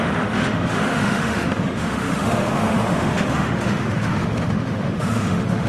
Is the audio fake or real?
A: fake